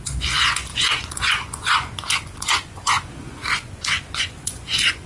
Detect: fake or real fake